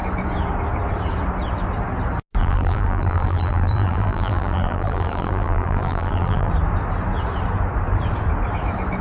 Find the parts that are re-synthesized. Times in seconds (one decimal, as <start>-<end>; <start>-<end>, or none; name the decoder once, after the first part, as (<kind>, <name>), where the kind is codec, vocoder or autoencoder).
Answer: 2.4-6.5 (vocoder, BigVGAN v2)